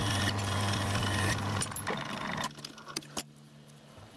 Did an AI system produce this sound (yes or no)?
no